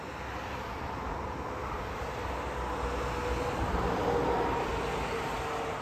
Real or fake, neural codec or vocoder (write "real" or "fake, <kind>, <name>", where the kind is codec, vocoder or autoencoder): real